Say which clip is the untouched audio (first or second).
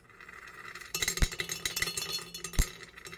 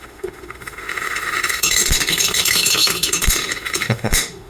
first